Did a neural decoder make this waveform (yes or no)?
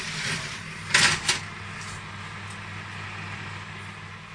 no